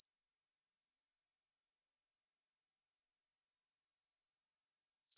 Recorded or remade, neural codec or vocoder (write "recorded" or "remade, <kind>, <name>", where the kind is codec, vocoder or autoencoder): remade, autoencoder, DAC-VAE